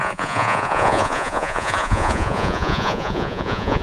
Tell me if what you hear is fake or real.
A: fake